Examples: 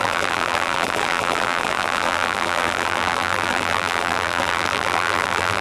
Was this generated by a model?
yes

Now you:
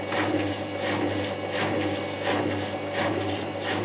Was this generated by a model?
no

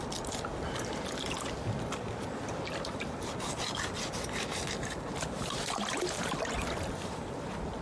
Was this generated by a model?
no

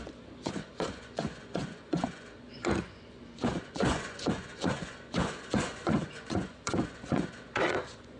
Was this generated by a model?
yes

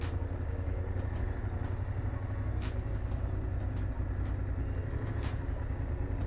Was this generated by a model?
no